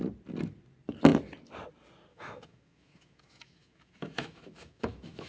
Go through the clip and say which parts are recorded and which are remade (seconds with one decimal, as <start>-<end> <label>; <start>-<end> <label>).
0.0-2.1 recorded; 2.1-5.3 remade